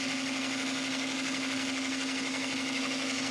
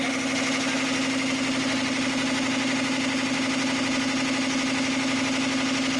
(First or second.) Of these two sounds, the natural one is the second